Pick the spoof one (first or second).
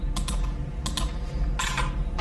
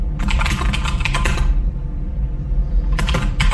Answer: second